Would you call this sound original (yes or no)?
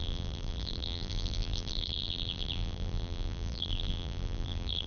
no